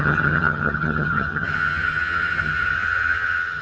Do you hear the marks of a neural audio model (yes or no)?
yes